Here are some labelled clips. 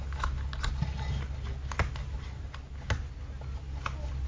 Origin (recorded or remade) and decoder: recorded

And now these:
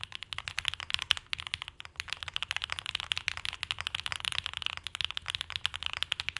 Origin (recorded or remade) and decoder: recorded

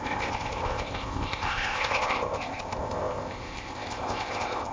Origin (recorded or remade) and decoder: remade, codec, ZipCodec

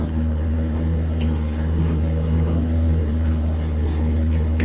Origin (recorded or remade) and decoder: remade, codec, SNAC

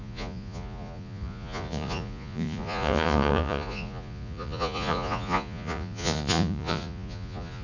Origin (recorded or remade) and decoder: remade, vocoder, Vocos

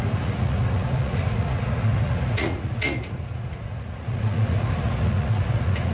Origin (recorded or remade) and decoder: remade, vocoder, Vocos